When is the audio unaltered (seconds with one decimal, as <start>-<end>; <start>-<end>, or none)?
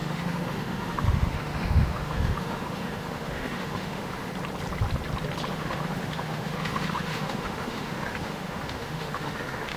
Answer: 4.3-5.5